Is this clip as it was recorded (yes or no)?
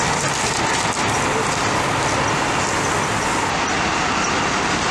yes